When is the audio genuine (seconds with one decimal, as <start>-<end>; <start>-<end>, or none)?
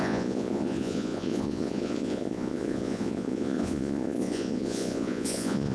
none